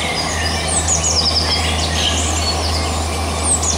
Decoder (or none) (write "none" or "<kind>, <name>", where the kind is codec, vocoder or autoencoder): none